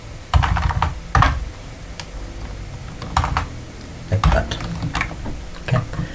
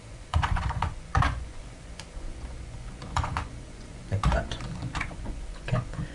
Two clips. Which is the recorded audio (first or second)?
first